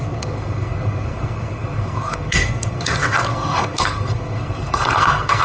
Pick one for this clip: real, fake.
fake